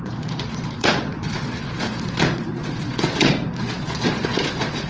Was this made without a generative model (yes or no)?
no